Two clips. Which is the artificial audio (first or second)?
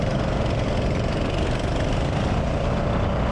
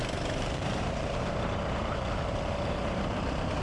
second